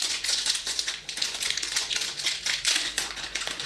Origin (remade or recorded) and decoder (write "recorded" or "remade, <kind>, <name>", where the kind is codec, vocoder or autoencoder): remade, vocoder, Vocos